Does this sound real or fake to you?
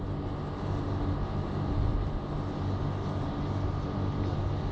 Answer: real